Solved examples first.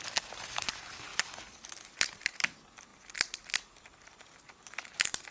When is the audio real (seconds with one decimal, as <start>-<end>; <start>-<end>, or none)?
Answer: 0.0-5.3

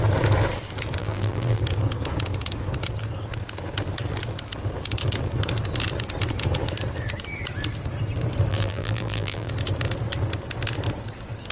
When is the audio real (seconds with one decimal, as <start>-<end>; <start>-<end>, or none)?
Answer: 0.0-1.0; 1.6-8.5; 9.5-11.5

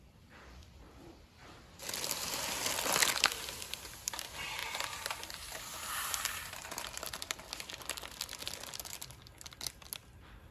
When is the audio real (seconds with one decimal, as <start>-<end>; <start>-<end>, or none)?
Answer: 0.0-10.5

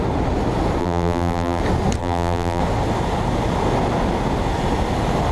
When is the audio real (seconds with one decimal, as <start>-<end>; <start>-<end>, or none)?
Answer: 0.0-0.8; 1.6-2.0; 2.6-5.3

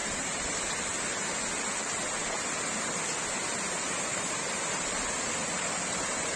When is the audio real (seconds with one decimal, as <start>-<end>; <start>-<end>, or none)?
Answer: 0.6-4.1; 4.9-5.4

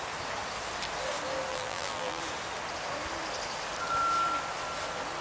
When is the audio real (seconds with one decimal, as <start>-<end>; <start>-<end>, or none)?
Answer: 0.0-1.5; 2.2-5.2